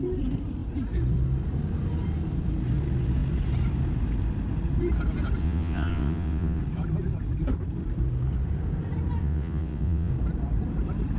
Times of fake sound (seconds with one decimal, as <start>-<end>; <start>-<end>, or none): 5.4-6.6; 9.2-10.1